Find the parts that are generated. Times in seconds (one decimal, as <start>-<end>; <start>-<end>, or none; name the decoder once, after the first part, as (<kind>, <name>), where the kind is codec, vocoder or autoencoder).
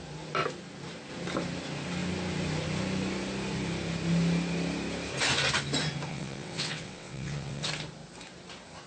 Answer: 6.1-7.7 (vocoder, WaveNeXt)